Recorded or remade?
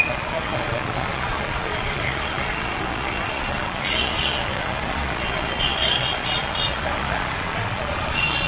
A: remade